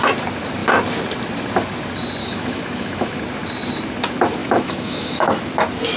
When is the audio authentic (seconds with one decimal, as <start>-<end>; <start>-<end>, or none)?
0.0-2.2; 3.2-4.4; 5.4-6.0